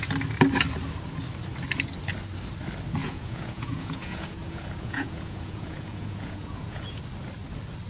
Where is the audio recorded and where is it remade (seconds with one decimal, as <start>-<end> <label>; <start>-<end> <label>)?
0.0-3.0 recorded; 3.0-7.0 remade; 7.0-7.9 recorded